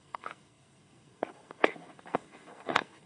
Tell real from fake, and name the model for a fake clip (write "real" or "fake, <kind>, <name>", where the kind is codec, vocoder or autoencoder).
fake, codec, SNAC